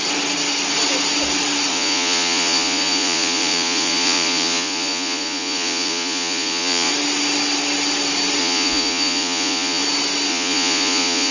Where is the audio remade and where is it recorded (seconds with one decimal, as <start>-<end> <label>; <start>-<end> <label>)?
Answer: 0.0-1.7 recorded; 1.7-6.9 remade; 6.9-8.4 recorded; 8.4-9.8 remade; 9.8-10.3 recorded; 10.3-11.3 remade